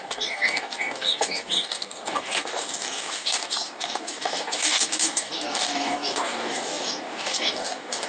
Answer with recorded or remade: remade